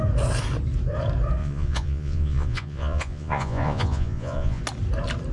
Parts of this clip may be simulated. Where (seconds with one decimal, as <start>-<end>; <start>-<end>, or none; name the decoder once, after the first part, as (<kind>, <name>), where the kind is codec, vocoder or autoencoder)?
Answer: 1.4-4.6 (vocoder, Vocos)

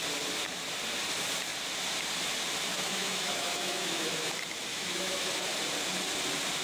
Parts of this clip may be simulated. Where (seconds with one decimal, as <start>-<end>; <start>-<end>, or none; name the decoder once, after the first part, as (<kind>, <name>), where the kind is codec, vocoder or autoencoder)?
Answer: 2.7-4.3 (autoencoder, DAC-VAE); 4.7-5.5